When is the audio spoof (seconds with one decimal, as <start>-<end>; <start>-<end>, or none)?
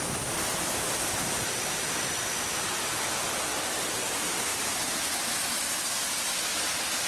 none